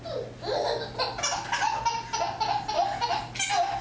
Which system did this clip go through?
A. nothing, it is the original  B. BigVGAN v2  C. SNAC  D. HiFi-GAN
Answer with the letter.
A